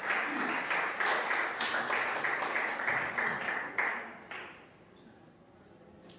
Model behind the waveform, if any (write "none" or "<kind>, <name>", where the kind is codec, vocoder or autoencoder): none